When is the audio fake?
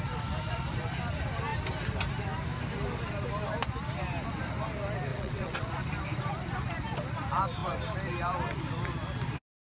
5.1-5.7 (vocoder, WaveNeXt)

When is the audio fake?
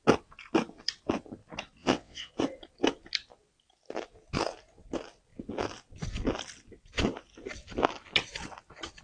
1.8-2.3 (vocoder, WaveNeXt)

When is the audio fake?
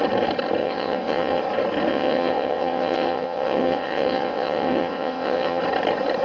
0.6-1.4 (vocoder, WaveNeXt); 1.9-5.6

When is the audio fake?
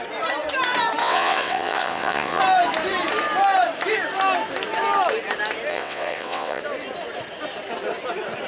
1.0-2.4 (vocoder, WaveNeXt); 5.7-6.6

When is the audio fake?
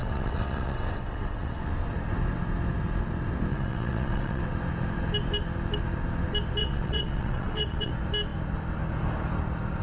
0.0-1.7 (vocoder, WaveNeXt); 3.5-4.4; 6.6-7.9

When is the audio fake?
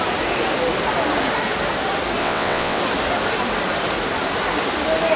2.2-2.8 (vocoder, WaveNeXt)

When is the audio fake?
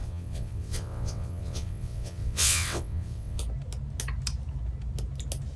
0.0-3.4 (vocoder, WaveNeXt)